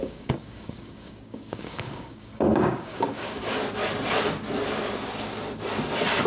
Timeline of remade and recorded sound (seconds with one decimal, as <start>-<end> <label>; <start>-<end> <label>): 0.0-3.6 remade; 3.6-6.3 recorded